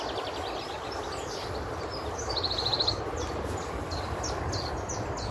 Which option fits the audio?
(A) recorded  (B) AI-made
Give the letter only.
A